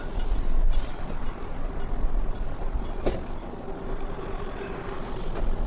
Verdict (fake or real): real